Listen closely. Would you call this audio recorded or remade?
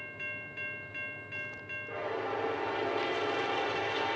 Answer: recorded